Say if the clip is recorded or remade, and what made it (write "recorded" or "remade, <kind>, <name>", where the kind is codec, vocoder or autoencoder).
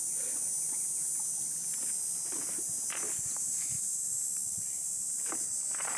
recorded